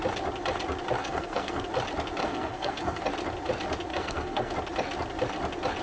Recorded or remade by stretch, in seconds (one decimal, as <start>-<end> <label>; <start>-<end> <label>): 0.0-1.0 recorded; 1.0-1.6 remade; 1.6-2.2 recorded; 2.2-3.0 remade; 3.0-3.9 recorded; 3.9-4.5 remade; 4.5-5.8 recorded